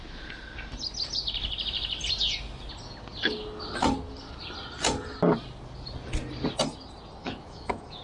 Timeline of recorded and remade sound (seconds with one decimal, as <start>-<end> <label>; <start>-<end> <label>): 0.0-7.2 recorded; 7.2-8.0 remade